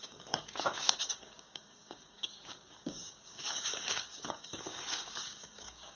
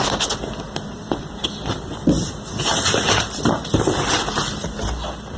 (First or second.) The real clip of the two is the second